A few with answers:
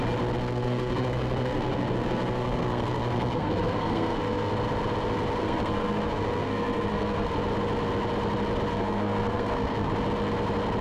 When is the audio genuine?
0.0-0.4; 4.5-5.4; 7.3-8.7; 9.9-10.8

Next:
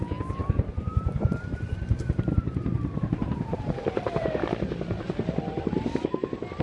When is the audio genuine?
0.0-0.4; 4.4-6.6